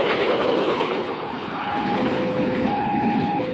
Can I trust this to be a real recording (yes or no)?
no